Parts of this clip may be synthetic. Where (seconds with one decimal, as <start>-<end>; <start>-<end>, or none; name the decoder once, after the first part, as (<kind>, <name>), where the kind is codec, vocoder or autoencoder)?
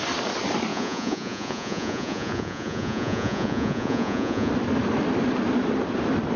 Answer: 0.7-4.5 (vocoder, Vocos)